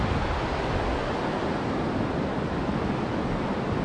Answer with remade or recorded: recorded